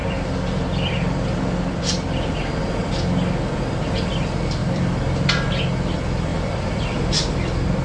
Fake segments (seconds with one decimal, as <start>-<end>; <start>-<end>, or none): 0.0-2.9; 4.6-5.6; 6.3-7.8